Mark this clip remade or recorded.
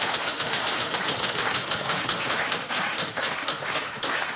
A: remade